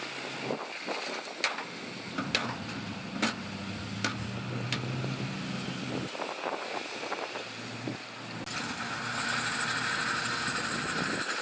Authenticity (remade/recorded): recorded